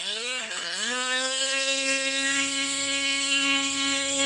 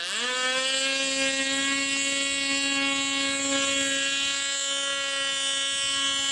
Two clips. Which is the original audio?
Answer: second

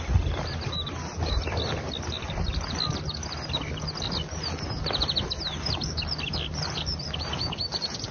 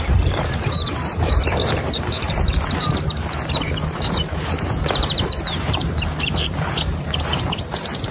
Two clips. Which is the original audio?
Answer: first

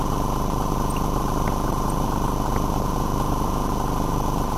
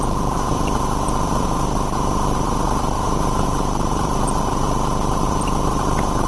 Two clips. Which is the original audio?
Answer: first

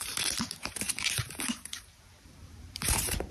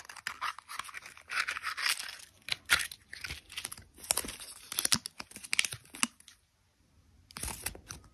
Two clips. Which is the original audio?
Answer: second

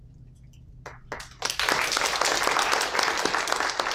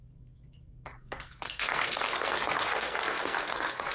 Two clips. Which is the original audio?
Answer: first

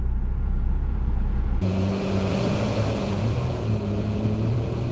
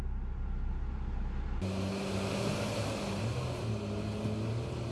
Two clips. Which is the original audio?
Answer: second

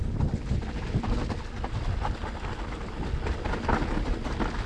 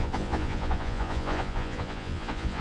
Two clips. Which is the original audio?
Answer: first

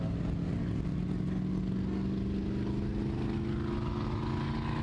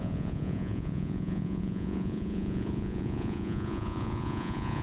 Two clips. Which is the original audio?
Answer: first